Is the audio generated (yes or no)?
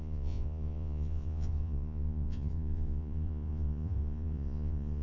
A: yes